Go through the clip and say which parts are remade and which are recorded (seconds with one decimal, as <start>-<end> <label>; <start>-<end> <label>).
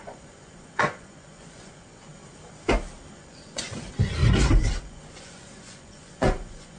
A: 0.0-2.1 remade; 2.1-3.1 recorded; 3.1-4.2 remade; 4.2-4.8 recorded; 4.8-6.8 remade